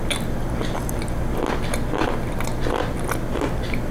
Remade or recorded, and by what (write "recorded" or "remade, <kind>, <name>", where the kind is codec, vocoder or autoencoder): recorded